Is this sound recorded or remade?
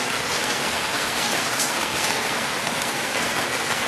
remade